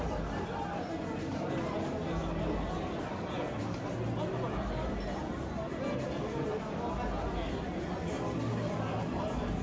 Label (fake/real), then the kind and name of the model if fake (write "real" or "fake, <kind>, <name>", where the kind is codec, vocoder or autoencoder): real